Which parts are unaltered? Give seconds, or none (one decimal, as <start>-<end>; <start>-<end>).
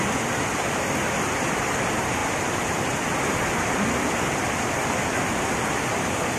0.0-6.4